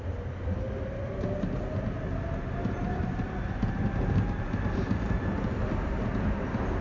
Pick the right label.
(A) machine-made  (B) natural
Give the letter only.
B